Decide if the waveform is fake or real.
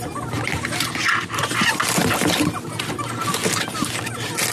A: real